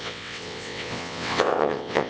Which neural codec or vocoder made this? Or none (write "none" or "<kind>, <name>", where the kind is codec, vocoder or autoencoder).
vocoder, WaveNeXt